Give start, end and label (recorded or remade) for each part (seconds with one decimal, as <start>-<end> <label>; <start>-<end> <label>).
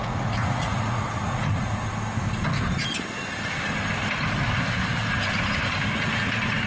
0.0-1.8 remade; 1.8-6.7 recorded